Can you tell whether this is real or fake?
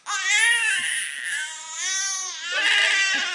real